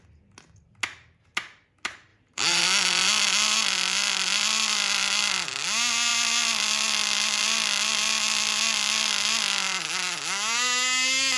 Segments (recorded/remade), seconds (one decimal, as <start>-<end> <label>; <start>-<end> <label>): 0.0-2.1 recorded; 2.1-2.6 remade; 2.6-11.4 recorded